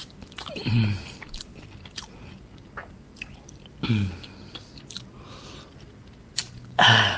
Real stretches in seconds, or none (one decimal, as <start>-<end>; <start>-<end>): 0.0-7.2